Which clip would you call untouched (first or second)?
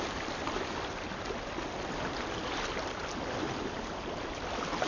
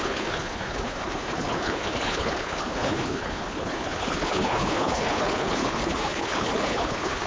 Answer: first